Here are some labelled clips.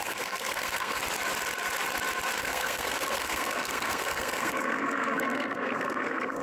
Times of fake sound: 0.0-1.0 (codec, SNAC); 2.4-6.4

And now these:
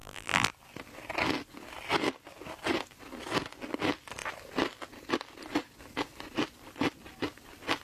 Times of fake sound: 0.0-0.5 (vocoder, BigVGAN v2)